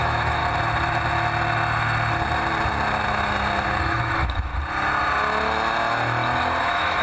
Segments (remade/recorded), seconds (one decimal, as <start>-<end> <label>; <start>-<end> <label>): 0.0-0.4 remade; 0.4-3.8 recorded; 3.8-4.5 remade; 4.5-6.6 recorded; 6.6-7.0 remade